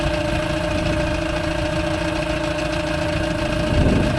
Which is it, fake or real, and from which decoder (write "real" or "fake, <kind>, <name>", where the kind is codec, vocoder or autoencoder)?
real